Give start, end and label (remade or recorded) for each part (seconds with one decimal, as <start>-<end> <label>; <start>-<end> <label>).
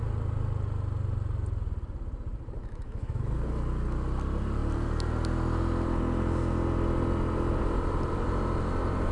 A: 0.0-2.6 recorded; 2.6-3.2 remade; 3.2-9.1 recorded